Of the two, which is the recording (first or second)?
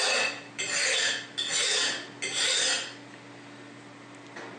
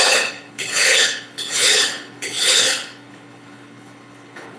first